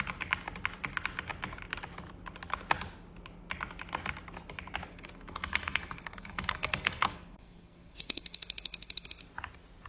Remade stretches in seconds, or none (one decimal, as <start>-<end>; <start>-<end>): 4.9-9.2